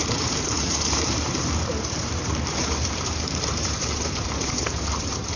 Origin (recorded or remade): remade